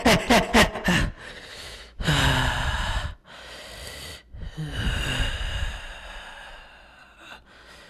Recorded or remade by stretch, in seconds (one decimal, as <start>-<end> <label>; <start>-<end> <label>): 0.0-1.5 recorded; 1.5-2.2 remade; 2.2-7.9 recorded